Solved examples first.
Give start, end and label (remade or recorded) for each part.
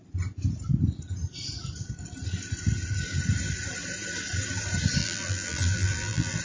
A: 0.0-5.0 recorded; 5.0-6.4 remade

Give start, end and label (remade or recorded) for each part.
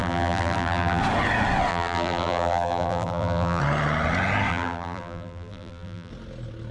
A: 0.0-1.0 remade; 1.0-1.7 recorded; 1.7-3.6 remade; 3.6-4.5 recorded; 4.5-6.1 remade; 6.1-6.7 recorded